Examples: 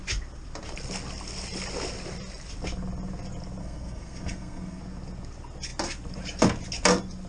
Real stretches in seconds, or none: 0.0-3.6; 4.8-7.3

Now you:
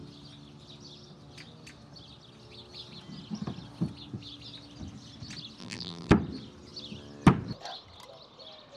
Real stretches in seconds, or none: 0.0-5.6; 6.1-8.8

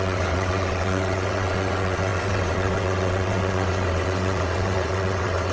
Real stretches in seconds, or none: none

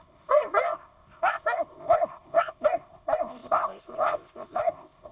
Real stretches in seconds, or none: none

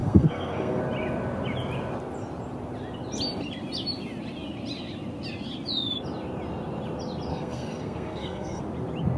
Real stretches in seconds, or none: 0.8-7.3; 8.6-9.2

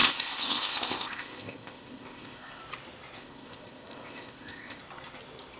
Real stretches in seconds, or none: 2.6-3.2; 4.8-5.6

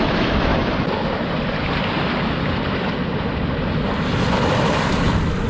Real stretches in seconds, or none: 0.0-5.5